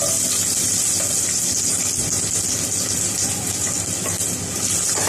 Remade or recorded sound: recorded